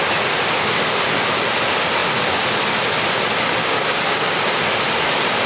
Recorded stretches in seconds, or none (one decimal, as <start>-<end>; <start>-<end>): 0.0-3.6; 4.6-5.5